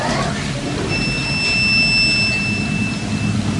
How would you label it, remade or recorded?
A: recorded